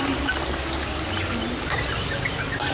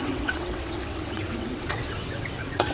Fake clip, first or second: second